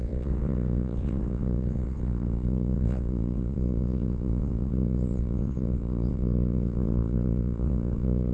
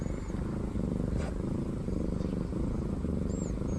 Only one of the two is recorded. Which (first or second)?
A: second